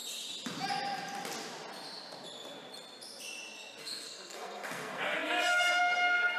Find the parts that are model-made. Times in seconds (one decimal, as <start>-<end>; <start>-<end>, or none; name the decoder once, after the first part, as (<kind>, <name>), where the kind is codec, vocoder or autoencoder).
3.8-6.4 (codec, SNAC)